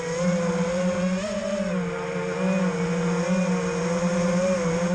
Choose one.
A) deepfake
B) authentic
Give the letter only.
B